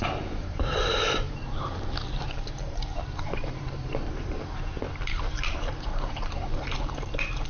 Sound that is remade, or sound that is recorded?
remade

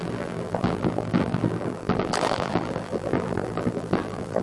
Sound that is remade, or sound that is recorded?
remade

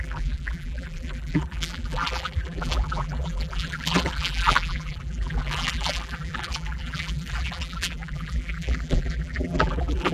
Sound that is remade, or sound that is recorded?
remade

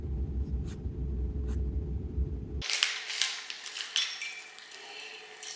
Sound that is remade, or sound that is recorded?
recorded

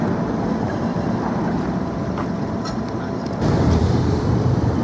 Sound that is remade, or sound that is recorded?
remade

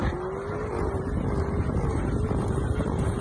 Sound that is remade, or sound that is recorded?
remade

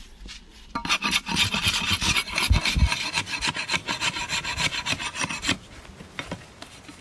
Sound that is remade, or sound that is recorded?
recorded